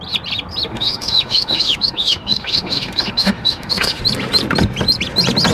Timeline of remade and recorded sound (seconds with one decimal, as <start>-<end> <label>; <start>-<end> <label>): 0.0-0.7 recorded; 0.7-4.0 remade; 4.0-5.5 recorded